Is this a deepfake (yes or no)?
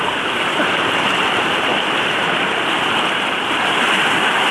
no